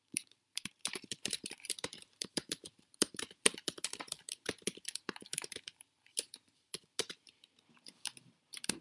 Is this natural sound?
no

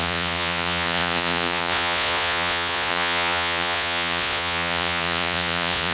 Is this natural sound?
no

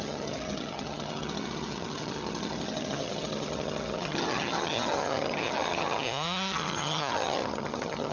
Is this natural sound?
no